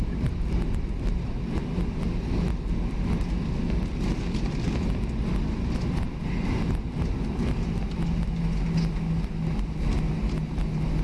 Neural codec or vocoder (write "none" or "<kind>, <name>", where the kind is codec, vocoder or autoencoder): none